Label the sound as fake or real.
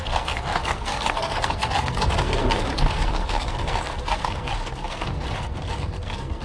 fake